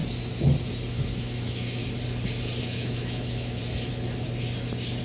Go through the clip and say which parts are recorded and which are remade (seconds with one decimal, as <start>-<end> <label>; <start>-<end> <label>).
0.0-1.2 recorded; 1.2-1.8 remade; 1.8-2.6 recorded; 2.6-3.6 remade; 3.6-5.0 recorded